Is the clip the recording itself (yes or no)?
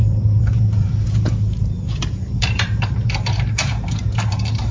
no